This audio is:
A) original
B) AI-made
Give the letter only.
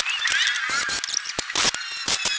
A